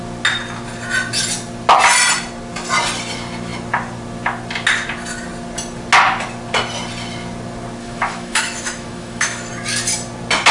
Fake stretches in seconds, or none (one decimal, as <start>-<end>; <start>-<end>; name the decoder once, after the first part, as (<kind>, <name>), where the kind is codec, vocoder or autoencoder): 7.8-9.5 (autoencoder, DAC-VAE)